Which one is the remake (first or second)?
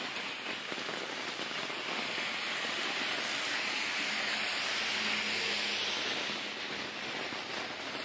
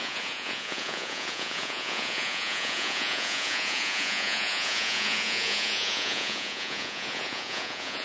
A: second